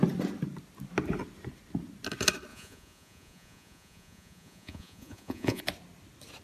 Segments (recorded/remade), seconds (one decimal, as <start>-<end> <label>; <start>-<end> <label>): 0.0-2.5 recorded; 2.5-5.6 remade; 5.6-6.4 recorded